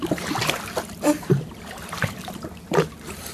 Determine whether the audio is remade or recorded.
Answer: recorded